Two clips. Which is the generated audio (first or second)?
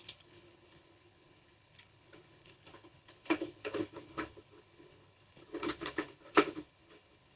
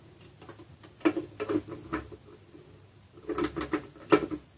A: first